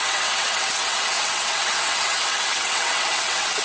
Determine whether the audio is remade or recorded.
remade